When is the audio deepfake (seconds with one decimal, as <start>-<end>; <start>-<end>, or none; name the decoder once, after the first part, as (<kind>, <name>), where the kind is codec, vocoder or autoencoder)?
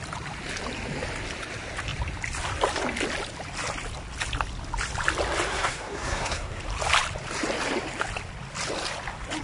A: 5.5-6.6 (codec, SNAC)